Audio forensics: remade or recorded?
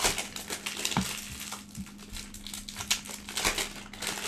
recorded